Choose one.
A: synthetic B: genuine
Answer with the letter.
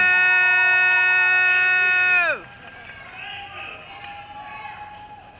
B